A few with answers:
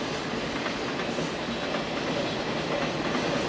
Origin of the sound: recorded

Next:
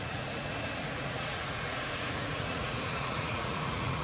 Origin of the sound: remade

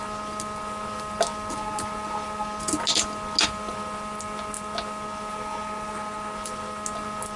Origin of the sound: recorded